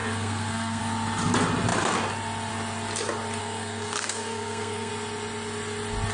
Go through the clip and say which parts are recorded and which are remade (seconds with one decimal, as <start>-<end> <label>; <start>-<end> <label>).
0.0-0.8 remade; 0.8-3.4 recorded; 3.4-4.9 remade; 4.9-6.1 recorded